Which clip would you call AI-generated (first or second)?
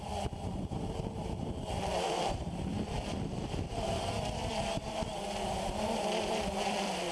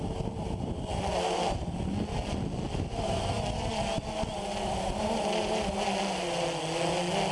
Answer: first